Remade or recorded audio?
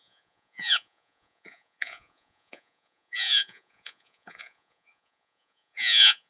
remade